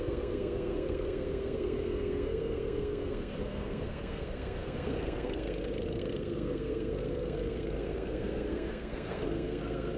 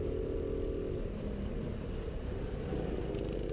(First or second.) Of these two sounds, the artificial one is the first